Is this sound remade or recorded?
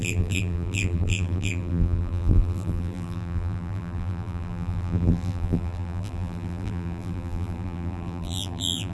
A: remade